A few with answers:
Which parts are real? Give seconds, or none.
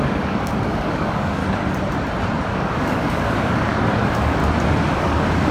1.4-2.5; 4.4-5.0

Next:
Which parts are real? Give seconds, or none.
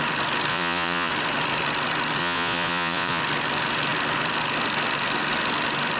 0.0-0.5; 1.1-2.2; 3.2-6.0